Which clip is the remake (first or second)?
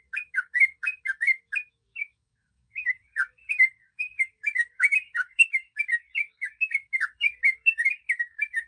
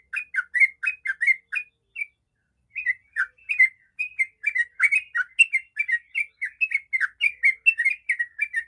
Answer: first